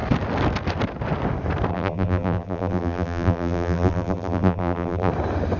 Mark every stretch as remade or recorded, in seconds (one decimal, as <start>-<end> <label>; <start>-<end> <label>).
0.0-1.7 recorded; 1.7-5.1 remade; 5.1-5.6 recorded